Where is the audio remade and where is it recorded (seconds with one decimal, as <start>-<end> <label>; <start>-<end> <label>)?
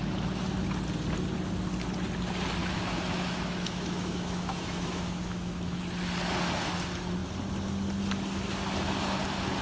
0.0-2.6 recorded; 2.6-5.8 remade; 5.8-9.6 recorded